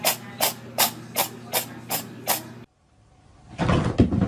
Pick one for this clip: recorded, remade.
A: recorded